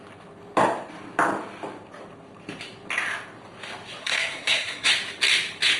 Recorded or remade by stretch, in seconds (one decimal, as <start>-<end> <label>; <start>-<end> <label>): 0.0-4.0 recorded; 4.0-4.9 remade; 4.9-5.8 recorded